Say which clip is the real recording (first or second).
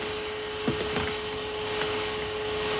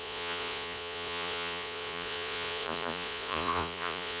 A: first